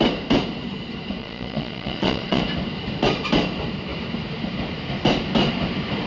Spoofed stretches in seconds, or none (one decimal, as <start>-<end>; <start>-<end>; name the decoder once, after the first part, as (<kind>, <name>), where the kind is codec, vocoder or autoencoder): 1.2-2.4 (vocoder, Vocos)